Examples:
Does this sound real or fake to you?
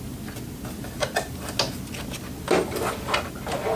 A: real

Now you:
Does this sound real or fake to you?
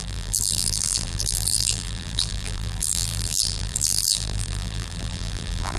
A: fake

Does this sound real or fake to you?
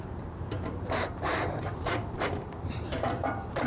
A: fake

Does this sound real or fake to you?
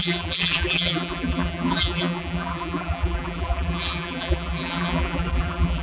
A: fake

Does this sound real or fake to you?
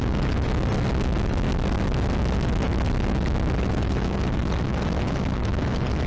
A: real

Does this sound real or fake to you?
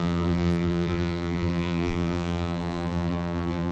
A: fake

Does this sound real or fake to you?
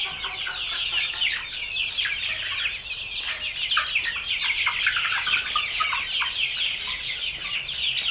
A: real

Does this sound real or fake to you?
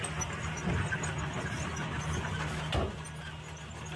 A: real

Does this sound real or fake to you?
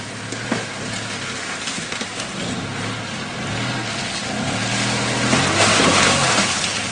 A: real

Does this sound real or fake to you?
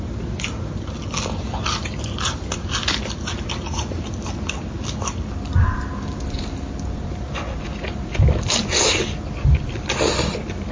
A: real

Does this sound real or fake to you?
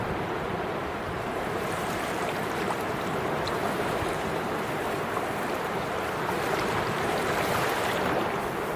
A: fake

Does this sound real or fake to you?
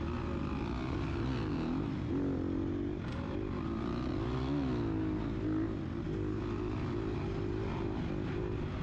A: real